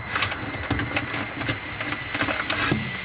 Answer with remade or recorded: recorded